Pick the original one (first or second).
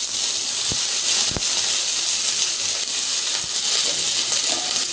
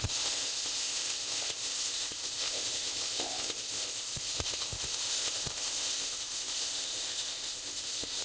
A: first